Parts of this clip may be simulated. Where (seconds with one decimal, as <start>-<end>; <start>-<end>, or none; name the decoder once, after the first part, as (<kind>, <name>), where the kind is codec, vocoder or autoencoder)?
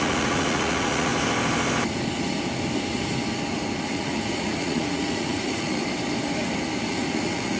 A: 0.0-1.1 (vocoder, Vocos); 3.8-5.8; 6.9-7.6